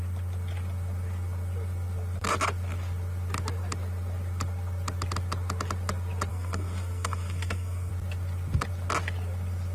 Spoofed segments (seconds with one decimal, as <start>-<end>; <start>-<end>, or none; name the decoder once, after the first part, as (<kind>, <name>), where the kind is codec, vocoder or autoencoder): 6.3-7.9 (codec, SNAC)